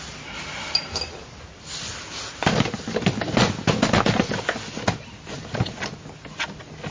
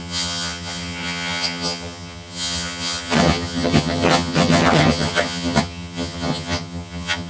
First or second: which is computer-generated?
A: second